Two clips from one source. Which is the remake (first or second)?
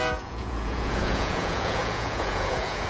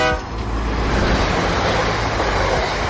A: first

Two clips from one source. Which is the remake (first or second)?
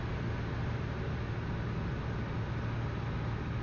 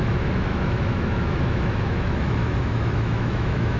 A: second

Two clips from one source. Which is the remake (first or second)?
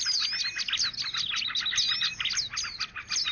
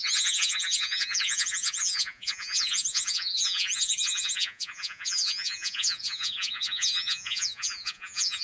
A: second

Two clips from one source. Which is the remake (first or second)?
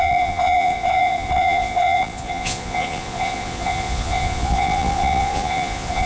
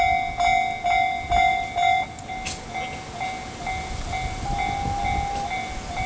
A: first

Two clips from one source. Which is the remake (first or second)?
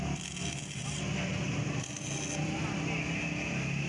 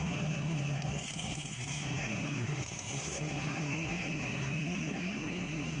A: second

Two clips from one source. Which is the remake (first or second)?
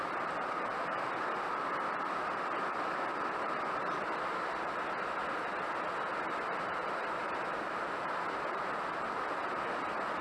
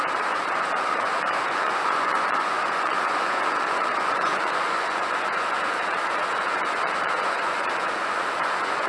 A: second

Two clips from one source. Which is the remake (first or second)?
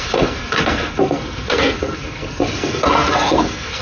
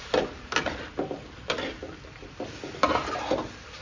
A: first